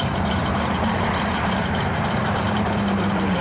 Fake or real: fake